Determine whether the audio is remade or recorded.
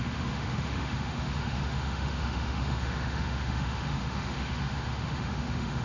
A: remade